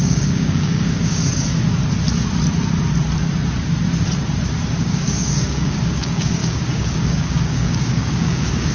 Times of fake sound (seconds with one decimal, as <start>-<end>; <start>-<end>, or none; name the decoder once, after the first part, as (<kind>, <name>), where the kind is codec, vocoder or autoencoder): 0.0-1.2 (codec, DAC); 4.8-8.7